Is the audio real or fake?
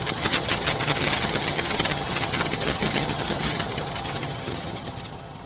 fake